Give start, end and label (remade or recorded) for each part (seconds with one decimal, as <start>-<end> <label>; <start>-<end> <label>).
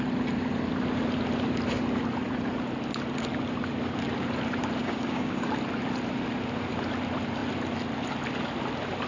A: 0.0-4.8 recorded; 4.8-5.5 remade; 5.5-9.1 recorded